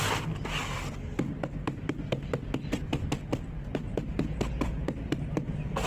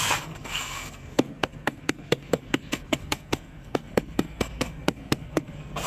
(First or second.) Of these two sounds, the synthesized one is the second